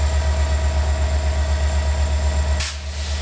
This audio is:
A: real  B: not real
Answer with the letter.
A